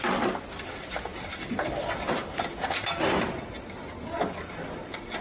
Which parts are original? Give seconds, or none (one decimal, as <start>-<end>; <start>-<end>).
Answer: 0.0-1.1; 4.2-5.2